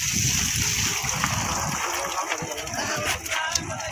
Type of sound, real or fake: real